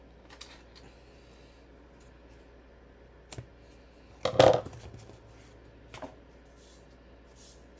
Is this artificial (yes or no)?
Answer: no